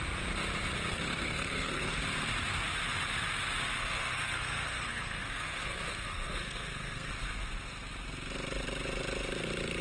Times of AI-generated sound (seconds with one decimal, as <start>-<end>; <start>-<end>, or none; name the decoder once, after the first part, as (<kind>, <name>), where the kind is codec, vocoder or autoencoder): 0.9-2.0 (codec, SNAC); 3.8-7.1